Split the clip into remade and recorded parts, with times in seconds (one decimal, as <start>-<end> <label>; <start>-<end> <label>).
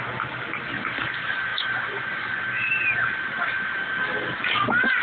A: 0.0-1.5 recorded; 1.5-2.4 remade; 2.4-5.0 recorded